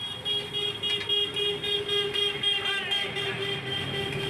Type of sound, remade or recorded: recorded